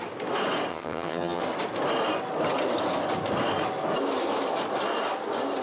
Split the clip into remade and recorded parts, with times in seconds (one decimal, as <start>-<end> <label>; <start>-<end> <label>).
0.0-0.7 recorded; 0.7-1.4 remade; 1.4-5.6 recorded